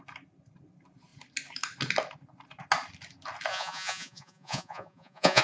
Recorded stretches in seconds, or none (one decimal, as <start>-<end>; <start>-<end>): 0.0-3.5